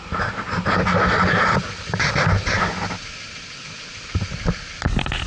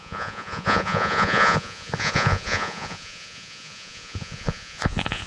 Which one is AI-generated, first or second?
second